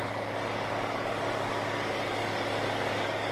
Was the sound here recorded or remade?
remade